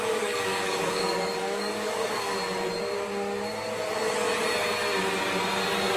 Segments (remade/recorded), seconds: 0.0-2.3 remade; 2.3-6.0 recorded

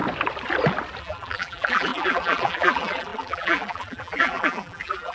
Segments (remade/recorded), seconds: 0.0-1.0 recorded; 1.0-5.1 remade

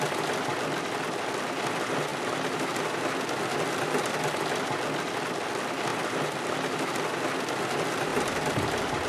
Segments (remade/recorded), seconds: 0.0-8.1 recorded; 8.1-9.1 remade